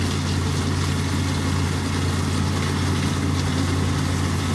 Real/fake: real